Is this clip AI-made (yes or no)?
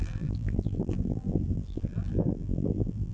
yes